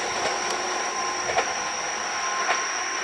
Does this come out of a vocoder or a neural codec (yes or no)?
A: no